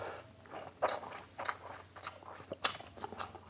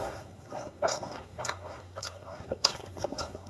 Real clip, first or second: first